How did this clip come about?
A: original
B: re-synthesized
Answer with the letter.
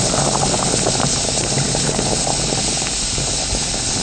A